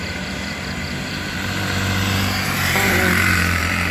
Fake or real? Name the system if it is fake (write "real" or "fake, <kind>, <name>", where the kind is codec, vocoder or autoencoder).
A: fake, vocoder, BigVGAN v2